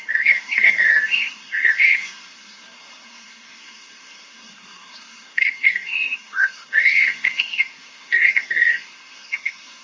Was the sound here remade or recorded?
remade